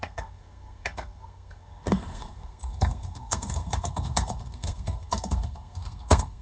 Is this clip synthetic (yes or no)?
yes